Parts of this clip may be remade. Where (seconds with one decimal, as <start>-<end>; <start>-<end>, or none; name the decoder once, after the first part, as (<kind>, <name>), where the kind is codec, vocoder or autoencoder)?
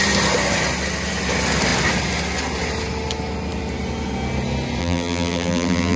4.8-6.0 (vocoder, BigVGAN v2)